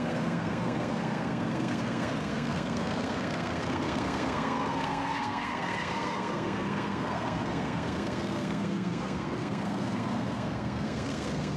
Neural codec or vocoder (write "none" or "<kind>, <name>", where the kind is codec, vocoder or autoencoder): codec, SNAC